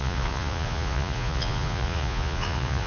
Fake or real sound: fake